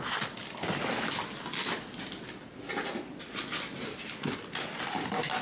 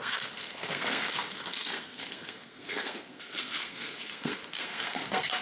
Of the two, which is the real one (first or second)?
first